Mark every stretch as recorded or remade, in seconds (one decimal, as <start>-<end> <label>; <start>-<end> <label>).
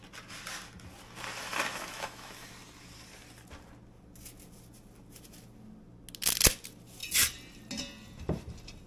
0.0-1.7 recorded; 1.7-2.5 remade; 2.5-8.9 recorded